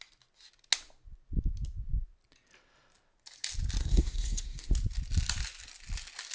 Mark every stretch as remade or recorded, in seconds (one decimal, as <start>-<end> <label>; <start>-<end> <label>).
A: 0.0-3.8 recorded; 3.8-4.7 remade; 4.7-6.3 recorded